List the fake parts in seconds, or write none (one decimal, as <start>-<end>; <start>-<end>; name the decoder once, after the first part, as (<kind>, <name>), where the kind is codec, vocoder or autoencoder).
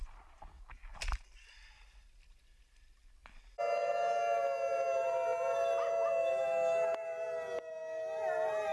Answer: none